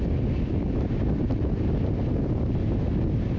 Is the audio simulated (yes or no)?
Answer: no